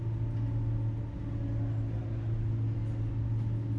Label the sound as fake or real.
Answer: real